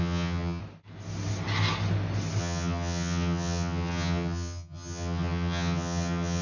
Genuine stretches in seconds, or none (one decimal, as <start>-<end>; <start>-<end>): 0.6-2.4